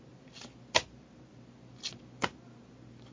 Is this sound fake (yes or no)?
no